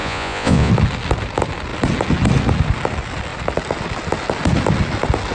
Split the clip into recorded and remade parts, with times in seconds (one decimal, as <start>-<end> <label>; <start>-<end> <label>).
0.0-0.7 remade; 0.7-5.3 recorded